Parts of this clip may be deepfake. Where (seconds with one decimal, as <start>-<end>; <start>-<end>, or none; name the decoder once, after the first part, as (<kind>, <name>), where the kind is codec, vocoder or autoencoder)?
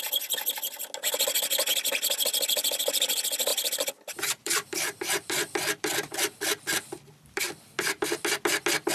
3.5-7.4 (vocoder, BigVGAN v2)